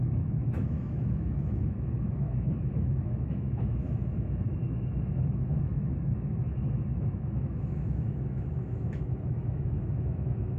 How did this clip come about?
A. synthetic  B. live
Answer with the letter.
A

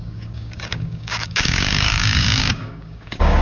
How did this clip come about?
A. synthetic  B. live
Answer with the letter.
A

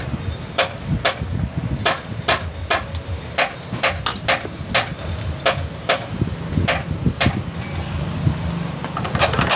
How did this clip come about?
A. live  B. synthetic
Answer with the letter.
A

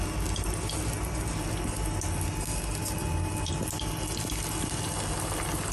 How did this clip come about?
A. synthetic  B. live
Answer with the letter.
B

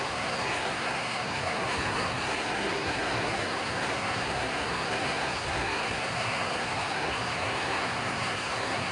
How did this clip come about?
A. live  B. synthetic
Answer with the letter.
B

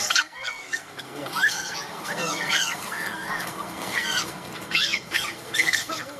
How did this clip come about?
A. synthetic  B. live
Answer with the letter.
A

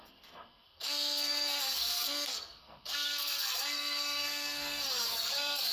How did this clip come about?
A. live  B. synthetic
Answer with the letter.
B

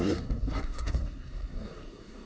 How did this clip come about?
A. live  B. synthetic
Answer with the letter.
B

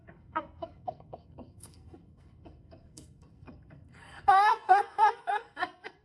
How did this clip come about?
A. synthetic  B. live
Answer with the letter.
A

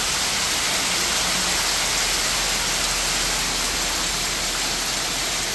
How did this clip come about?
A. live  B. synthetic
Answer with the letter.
A